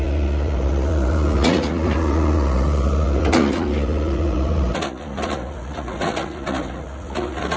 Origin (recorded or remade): remade